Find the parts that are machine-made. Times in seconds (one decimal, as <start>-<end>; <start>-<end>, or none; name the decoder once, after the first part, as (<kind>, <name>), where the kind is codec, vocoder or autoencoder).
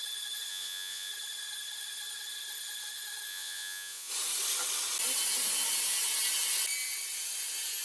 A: 0.5-1.1 (vocoder, Vocos); 3.3-4.1